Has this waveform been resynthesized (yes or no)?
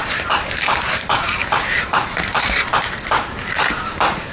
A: yes